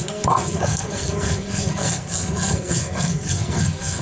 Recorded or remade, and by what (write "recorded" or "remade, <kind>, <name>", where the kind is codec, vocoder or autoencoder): remade, codec, SNAC